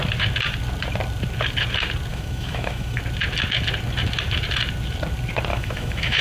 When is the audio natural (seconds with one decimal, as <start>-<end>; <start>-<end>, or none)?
0.0-2.1; 3.0-5.5